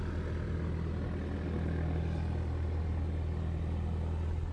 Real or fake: real